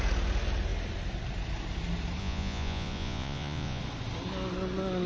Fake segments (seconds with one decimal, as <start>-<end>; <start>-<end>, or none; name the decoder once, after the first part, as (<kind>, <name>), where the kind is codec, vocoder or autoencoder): 2.2-3.8 (vocoder, Vocos)